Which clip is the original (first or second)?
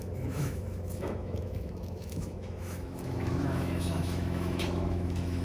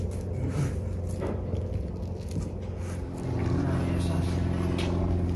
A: second